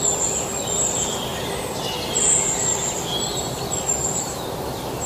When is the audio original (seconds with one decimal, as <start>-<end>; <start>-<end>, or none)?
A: 0.0-5.1